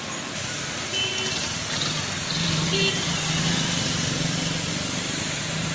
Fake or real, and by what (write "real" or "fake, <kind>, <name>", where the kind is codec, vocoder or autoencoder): real